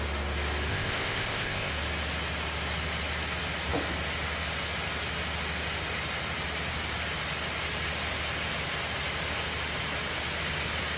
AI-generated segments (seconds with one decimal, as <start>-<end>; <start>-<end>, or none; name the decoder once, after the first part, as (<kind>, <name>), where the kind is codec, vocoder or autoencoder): 0.7-1.7 (codec, ZipCodec)